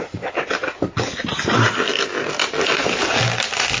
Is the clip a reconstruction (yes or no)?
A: no